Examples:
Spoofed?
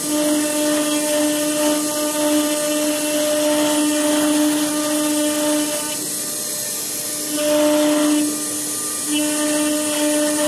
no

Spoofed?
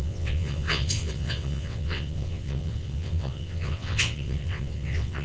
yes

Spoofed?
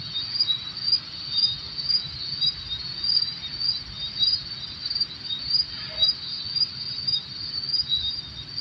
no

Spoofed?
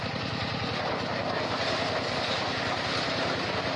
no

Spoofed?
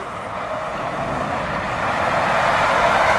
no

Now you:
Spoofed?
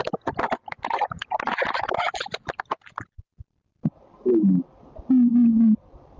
no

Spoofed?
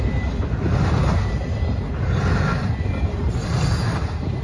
no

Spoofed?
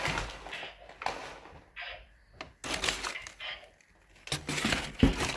no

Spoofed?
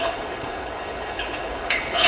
yes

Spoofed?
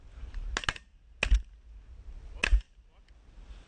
no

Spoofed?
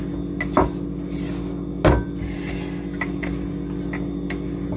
no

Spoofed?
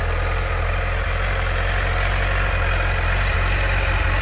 no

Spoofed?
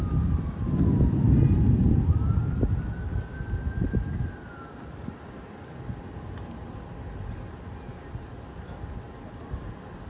no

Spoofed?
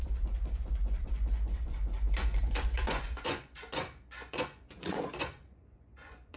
yes